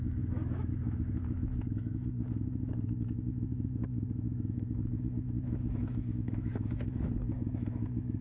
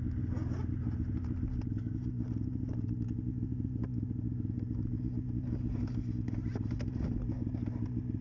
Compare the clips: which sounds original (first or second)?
second